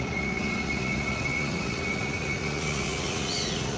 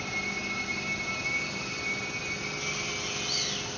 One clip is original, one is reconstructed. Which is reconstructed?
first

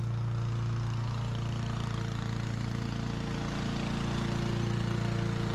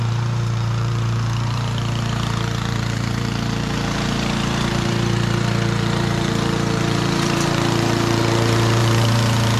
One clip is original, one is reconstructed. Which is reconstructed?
second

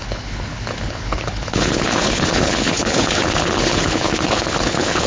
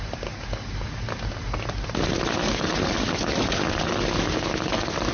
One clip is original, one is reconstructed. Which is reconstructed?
first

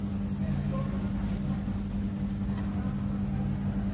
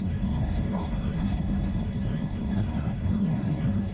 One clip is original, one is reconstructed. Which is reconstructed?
second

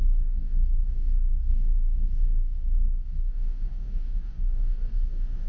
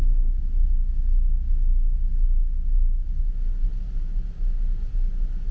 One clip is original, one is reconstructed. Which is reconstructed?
first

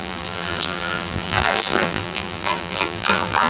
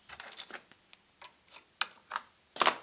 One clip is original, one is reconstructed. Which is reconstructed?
first